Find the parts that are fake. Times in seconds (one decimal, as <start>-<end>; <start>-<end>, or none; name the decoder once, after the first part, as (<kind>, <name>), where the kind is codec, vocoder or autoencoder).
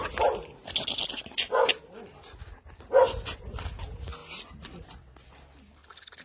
none